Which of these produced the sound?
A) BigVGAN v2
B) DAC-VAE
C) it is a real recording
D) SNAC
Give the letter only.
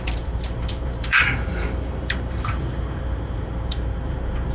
A